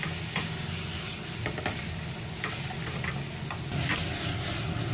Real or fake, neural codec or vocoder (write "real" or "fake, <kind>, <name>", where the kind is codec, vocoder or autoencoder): real